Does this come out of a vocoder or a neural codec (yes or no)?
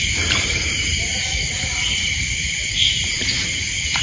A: yes